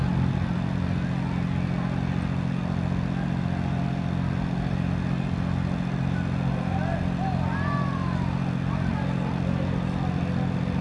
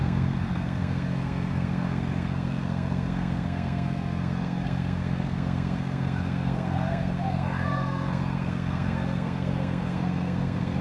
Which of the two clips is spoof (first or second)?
second